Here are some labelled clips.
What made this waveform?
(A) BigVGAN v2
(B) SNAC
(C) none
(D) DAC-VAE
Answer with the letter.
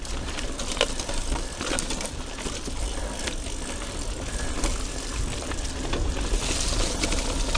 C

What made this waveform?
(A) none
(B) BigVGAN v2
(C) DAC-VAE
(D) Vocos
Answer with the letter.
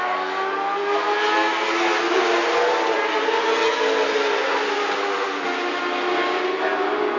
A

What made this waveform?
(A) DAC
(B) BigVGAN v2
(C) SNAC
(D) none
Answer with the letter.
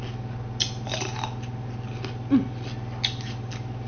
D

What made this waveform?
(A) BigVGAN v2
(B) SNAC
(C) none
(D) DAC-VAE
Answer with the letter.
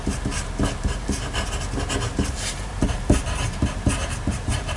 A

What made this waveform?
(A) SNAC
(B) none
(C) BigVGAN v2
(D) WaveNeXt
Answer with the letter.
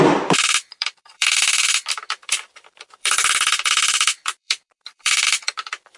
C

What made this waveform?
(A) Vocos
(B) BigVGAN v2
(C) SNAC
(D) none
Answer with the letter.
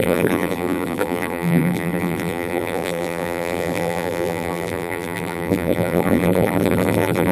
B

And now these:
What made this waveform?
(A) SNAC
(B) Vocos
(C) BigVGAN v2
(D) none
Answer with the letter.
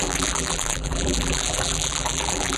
C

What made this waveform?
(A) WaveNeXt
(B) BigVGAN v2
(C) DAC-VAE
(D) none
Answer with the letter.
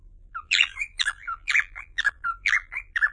B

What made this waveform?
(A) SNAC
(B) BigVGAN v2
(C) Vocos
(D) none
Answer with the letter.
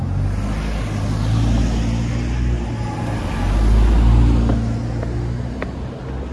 D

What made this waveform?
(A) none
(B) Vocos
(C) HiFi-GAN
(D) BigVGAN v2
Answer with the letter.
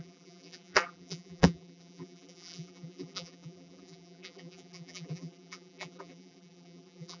D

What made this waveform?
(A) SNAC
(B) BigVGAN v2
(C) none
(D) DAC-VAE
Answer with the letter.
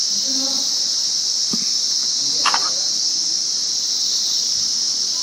C